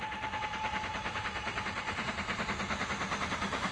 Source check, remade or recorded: recorded